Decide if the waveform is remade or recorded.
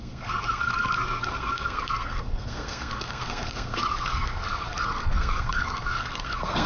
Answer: remade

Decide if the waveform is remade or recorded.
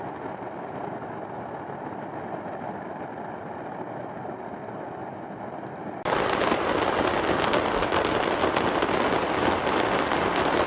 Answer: recorded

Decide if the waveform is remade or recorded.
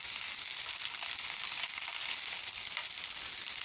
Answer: recorded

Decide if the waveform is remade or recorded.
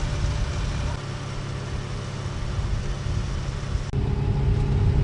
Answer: recorded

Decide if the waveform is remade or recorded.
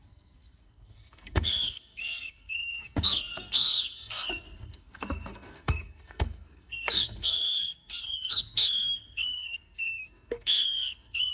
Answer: remade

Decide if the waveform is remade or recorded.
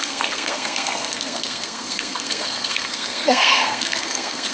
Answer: remade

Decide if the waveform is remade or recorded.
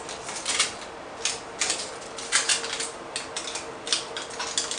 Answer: recorded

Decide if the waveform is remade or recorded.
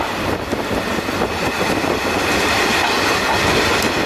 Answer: recorded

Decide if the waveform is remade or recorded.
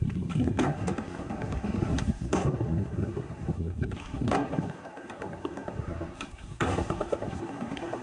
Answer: remade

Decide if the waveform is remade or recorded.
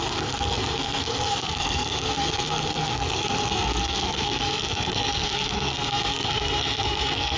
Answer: remade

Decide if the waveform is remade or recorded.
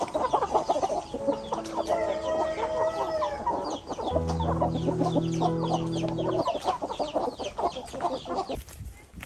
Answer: recorded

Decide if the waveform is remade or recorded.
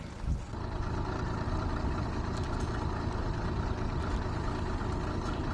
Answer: recorded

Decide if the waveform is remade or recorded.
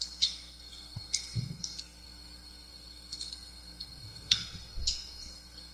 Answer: remade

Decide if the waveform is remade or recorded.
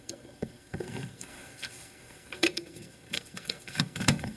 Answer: remade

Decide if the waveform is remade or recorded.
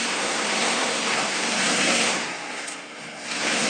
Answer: remade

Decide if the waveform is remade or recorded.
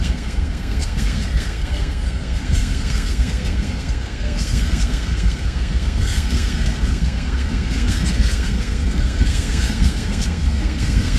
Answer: remade